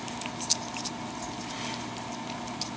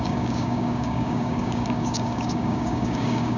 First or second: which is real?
first